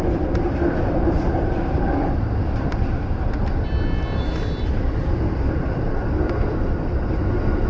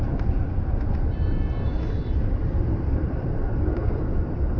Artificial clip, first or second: second